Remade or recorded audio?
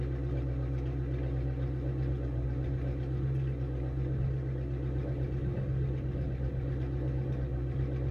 recorded